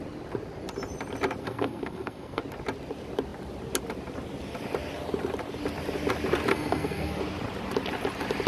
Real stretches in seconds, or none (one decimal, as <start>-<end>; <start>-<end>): 0.0-1.4; 2.4-6.5; 7.2-8.5